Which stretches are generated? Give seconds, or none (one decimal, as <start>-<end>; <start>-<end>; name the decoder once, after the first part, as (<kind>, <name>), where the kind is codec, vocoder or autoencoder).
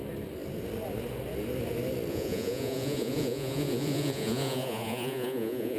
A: 2.1-5.8 (vocoder, Vocos)